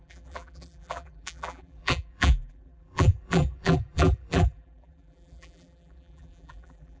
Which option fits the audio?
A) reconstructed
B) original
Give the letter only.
A